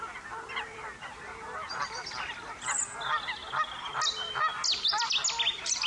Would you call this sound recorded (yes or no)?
yes